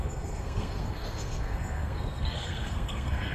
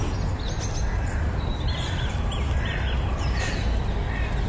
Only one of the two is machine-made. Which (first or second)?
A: first